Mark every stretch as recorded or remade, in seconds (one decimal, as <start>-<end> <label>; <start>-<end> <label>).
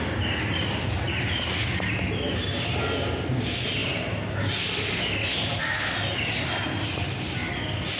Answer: 0.0-8.0 recorded